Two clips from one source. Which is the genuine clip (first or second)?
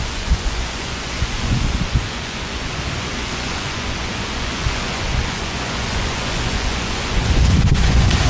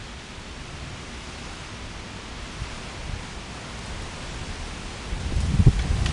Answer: second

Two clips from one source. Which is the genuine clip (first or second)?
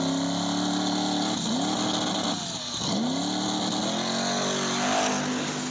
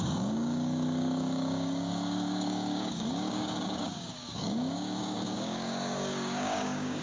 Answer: first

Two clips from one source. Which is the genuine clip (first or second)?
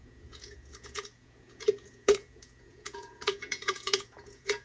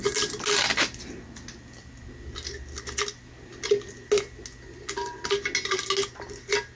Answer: second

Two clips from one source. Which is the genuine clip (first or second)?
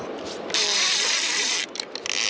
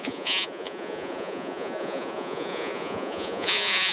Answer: first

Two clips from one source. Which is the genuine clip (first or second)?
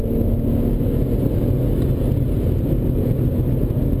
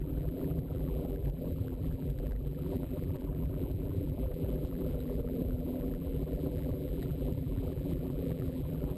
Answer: first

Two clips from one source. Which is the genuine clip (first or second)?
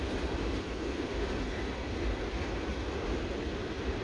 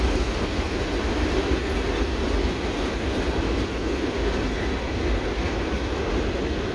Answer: second